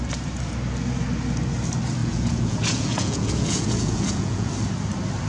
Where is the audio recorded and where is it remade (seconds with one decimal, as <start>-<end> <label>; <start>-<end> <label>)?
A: 0.0-2.0 recorded; 2.0-4.5 remade; 4.5-5.3 recorded